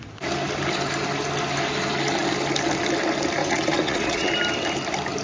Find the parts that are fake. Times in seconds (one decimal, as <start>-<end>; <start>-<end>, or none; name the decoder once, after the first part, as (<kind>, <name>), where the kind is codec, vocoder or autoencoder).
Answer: 3.4-4.3 (vocoder, Vocos)